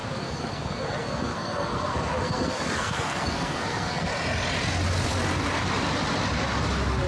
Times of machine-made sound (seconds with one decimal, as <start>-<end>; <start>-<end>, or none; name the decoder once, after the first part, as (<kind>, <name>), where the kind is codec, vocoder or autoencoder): 0.0-4.1 (codec, SNAC)